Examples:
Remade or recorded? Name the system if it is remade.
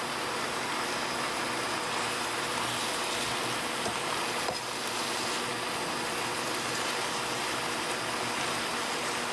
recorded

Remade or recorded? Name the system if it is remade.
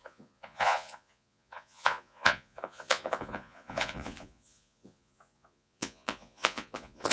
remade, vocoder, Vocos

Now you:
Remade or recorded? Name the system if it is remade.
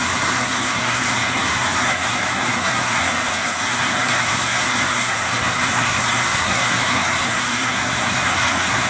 remade, codec, SNAC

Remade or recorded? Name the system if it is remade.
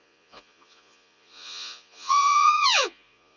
remade, vocoder, Vocos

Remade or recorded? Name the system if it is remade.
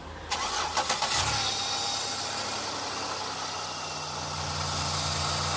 recorded